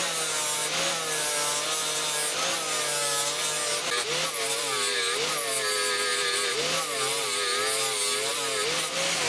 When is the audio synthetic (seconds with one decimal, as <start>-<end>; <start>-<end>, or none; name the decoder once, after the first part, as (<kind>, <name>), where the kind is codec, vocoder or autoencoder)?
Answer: none